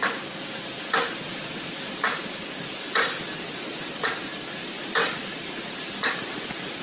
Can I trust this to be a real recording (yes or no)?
yes